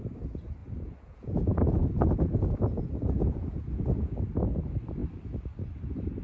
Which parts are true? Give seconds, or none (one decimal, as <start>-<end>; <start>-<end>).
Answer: 0.0-0.6; 4.2-6.2